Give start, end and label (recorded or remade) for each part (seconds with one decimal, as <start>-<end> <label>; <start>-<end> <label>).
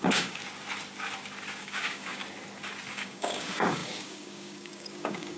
0.0-0.4 remade; 0.4-1.6 recorded; 1.6-2.2 remade; 2.2-2.9 recorded; 2.9-5.4 remade